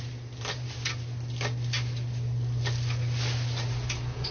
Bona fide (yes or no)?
yes